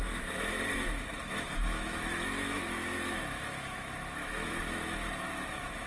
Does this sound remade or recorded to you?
remade